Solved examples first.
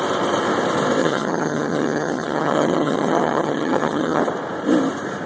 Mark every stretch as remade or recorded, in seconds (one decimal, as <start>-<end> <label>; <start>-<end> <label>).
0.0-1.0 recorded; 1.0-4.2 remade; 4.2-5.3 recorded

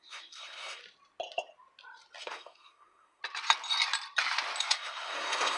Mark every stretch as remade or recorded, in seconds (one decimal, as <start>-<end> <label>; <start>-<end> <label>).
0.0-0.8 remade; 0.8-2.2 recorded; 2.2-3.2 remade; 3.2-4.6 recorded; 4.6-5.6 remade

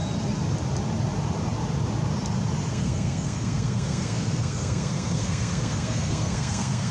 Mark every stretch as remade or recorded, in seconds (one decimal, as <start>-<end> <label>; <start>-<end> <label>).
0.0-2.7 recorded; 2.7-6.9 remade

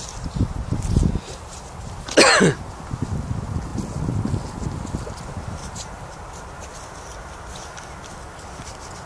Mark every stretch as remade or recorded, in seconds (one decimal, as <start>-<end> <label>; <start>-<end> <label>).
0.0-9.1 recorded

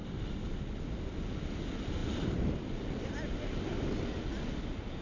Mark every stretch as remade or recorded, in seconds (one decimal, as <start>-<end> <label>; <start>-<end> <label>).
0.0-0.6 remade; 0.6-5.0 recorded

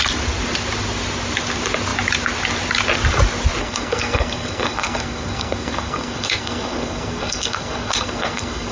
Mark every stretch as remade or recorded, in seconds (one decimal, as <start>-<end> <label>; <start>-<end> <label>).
0.0-3.6 recorded; 3.6-8.7 remade

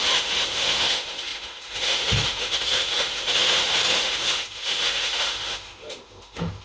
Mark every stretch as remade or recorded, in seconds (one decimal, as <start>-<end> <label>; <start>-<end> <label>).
0.0-6.6 remade

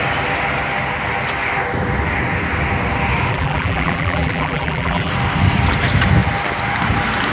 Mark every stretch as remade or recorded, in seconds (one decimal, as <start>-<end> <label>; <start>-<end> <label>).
0.0-3.3 recorded; 3.3-5.1 remade; 5.1-7.3 recorded